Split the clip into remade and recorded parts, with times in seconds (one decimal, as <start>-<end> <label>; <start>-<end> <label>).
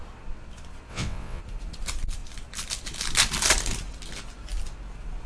0.0-0.9 recorded; 0.9-1.4 remade; 1.4-5.3 recorded